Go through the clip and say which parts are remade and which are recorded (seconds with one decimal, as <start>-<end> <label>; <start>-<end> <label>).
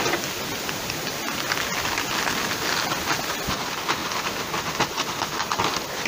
0.0-6.1 recorded